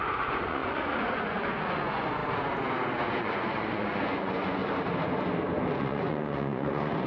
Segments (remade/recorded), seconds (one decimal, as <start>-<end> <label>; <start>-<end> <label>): 0.0-2.2 remade; 2.2-3.2 recorded; 3.2-4.6 remade; 4.6-5.8 recorded; 5.8-7.1 remade